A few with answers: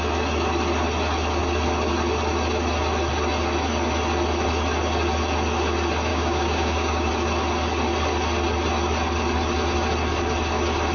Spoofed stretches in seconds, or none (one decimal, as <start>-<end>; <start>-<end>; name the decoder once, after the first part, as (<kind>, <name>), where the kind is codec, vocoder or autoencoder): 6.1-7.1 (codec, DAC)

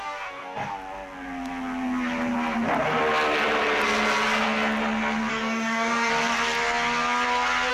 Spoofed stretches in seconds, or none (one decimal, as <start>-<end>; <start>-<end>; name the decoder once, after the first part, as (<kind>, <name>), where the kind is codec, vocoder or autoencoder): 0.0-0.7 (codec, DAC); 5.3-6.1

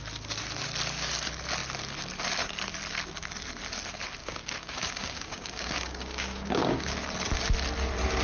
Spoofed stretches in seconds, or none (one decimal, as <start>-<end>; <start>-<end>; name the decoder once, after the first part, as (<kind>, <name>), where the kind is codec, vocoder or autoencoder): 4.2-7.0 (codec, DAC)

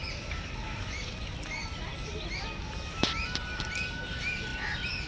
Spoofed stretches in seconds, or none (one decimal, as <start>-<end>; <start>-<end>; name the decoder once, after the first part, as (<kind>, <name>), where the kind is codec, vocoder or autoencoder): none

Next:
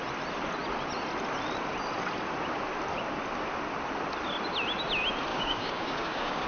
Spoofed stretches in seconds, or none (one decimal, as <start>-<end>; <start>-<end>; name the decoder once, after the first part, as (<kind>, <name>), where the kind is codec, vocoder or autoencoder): 5.3-6.5 (codec, DAC)

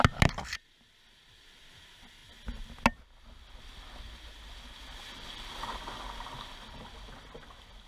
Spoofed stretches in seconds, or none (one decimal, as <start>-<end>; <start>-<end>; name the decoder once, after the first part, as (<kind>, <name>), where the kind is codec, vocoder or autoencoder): none

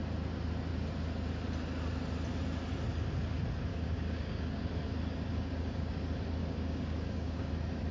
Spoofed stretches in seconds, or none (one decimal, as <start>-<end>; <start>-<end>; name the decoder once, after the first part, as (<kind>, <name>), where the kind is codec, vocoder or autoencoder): 3.7-4.7 (codec, DAC); 5.3-6.0; 6.4-7.5

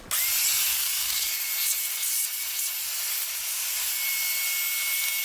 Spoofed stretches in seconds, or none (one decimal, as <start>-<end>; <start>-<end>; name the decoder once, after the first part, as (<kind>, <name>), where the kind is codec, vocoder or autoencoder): 0.7-1.5 (codec, DAC)